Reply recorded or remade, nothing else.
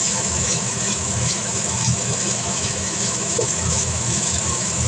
remade